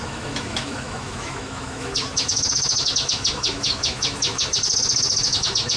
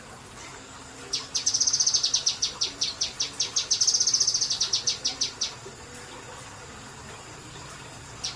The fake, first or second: first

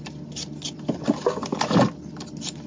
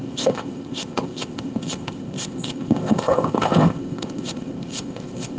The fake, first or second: second